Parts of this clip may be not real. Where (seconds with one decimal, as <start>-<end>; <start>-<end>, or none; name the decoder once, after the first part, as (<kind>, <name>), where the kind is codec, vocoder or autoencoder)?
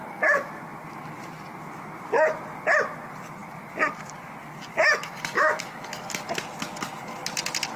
0.0-0.5 (codec, DAC); 4.9-6.2